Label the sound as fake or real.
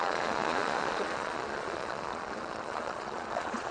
fake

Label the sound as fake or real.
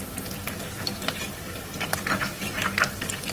real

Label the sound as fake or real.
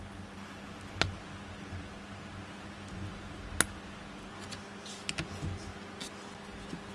real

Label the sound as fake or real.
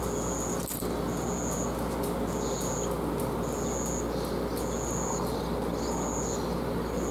real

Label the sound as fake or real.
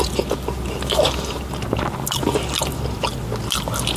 real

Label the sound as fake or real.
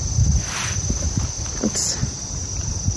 real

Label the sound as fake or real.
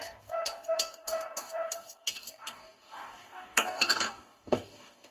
fake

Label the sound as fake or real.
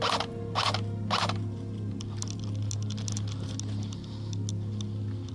real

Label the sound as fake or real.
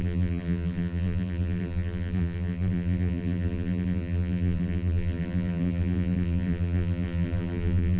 fake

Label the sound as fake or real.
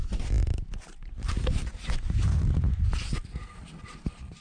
real